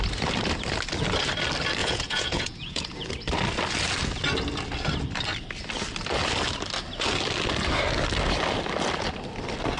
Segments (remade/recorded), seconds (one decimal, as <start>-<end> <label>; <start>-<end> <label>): 0.0-1.8 recorded; 1.8-3.1 remade; 3.1-9.8 recorded